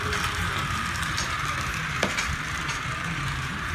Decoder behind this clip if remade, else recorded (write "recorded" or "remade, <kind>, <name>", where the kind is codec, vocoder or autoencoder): remade, vocoder, BigVGAN v2